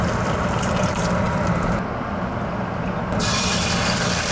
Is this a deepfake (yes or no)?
no